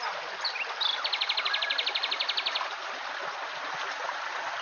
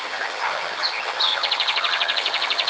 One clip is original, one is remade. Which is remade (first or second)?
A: second